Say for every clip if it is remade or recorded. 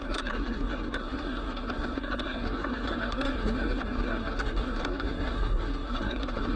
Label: remade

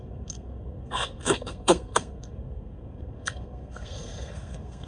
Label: remade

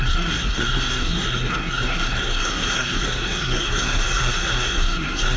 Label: remade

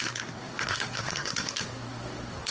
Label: remade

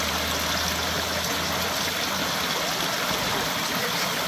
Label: recorded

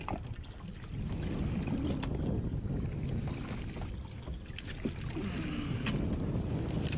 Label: recorded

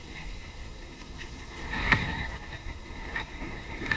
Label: remade